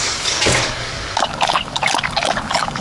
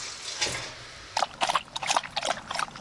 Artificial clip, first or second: first